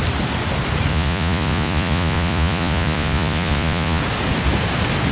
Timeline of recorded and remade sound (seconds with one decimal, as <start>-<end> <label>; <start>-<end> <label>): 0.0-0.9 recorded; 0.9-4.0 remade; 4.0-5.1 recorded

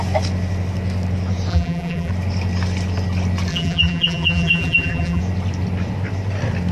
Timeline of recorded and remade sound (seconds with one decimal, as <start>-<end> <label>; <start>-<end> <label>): 0.0-1.5 recorded; 1.5-2.1 remade; 2.1-3.5 recorded; 3.5-5.2 remade; 5.2-6.7 recorded

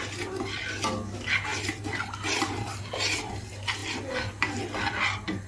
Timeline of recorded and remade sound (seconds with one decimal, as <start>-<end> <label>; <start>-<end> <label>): 0.0-5.5 recorded

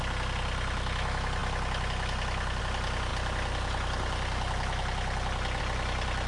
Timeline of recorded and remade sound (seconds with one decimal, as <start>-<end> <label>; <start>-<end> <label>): 0.0-6.3 recorded

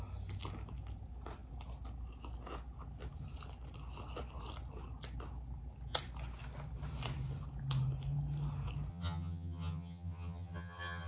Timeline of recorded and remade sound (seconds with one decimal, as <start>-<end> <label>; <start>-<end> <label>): 0.0-8.9 recorded; 8.9-11.1 remade

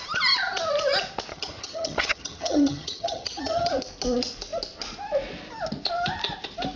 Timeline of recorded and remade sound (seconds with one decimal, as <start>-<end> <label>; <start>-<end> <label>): 0.0-1.3 recorded; 1.3-3.7 remade; 3.7-6.8 recorded

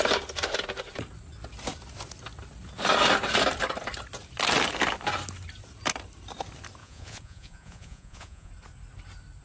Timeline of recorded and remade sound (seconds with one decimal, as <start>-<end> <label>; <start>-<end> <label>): 0.0-6.8 recorded; 6.8-8.5 remade; 8.5-9.4 recorded

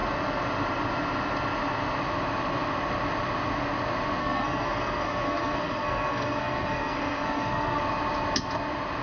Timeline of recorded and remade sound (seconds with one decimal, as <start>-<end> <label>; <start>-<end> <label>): 0.0-4.2 recorded; 4.2-7.8 remade; 7.8-9.0 recorded